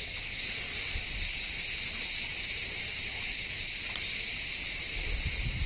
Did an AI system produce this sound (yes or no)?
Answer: no